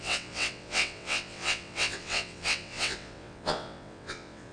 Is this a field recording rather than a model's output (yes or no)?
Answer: no